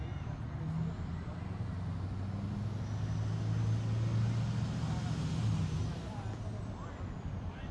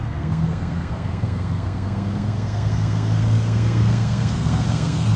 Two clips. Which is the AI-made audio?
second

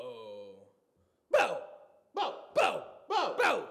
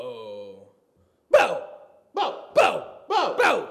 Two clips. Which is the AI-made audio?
second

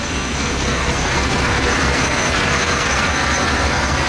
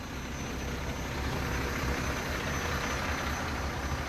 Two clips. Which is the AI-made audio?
first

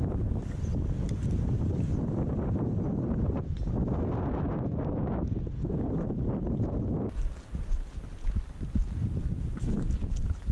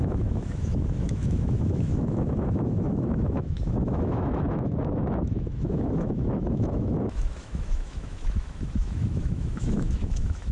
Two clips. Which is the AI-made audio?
second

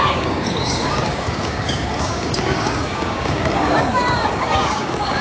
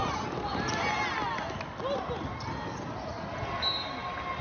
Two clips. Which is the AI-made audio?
first